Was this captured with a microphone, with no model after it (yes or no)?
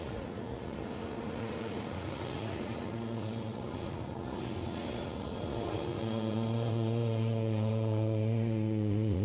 no